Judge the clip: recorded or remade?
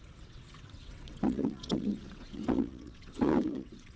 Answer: remade